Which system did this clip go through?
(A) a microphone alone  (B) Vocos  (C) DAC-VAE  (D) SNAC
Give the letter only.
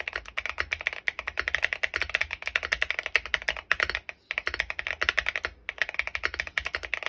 A